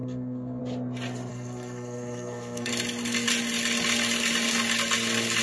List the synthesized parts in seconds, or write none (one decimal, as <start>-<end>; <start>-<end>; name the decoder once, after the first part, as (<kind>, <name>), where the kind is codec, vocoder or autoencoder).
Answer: 0.0-0.6 (codec, SNAC); 1.3-2.7